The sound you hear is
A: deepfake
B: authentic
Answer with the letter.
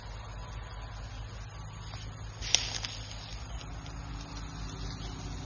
B